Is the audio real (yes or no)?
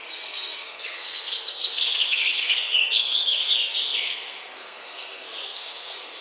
no